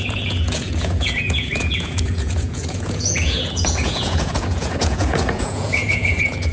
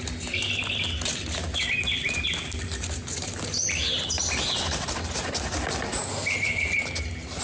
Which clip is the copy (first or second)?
first